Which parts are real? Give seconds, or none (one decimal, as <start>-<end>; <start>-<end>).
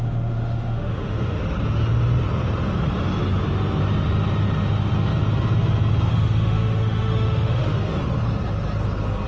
1.4-6.1; 7.9-9.3